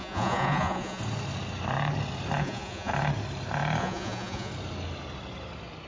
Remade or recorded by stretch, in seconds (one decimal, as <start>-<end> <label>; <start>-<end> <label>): 0.0-1.0 remade; 1.0-2.4 recorded; 2.4-2.9 remade; 2.9-3.8 recorded; 3.8-4.5 remade; 4.5-5.9 recorded